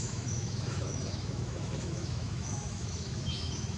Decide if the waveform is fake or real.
fake